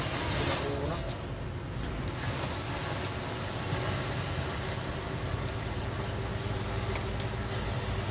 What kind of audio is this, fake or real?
real